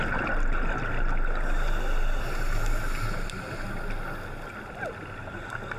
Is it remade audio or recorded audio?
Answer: recorded